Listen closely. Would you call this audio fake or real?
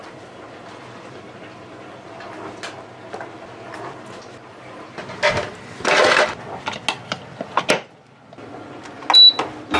real